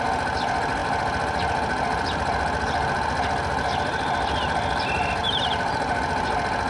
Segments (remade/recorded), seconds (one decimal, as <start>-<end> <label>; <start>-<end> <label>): 0.0-0.8 recorded; 0.8-4.8 remade; 4.8-5.2 recorded; 5.2-5.7 remade; 5.7-6.7 recorded